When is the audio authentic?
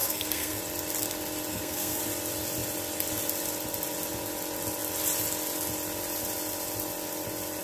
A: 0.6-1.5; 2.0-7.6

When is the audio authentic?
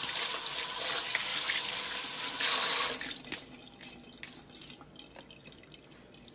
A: 0.0-6.3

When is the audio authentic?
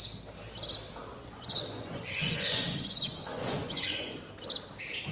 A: 0.0-1.1; 4.2-5.1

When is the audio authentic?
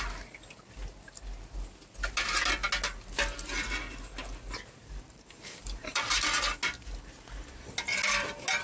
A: 0.0-4.8; 6.0-8.6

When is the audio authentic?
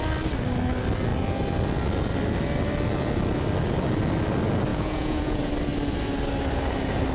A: 0.0-4.7; 5.5-7.1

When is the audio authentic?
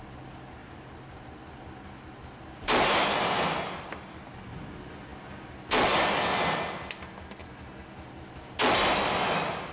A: 0.0-0.6; 1.2-9.7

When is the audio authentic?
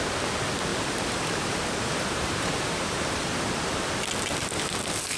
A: 0.0-0.7; 3.8-5.2